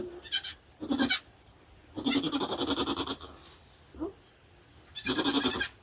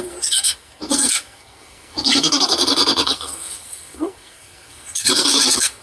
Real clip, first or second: first